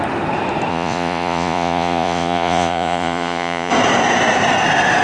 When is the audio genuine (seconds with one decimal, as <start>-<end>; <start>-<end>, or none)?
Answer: 0.0-0.7; 3.7-5.0